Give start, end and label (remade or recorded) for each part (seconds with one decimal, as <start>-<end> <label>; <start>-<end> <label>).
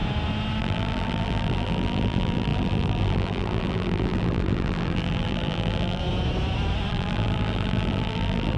0.0-0.6 recorded; 0.6-6.0 remade; 6.0-6.9 recorded; 6.9-8.6 remade